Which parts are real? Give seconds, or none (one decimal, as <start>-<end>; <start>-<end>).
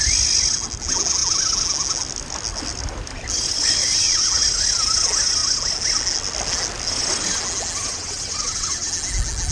0.0-3.8; 4.3-7.9; 8.9-9.5